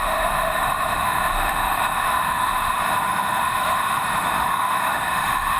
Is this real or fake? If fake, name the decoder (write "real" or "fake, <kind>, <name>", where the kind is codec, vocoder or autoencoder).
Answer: fake, autoencoder, DAC-VAE